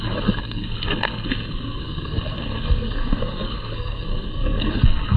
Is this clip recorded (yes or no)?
no